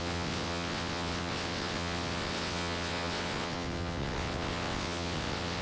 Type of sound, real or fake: fake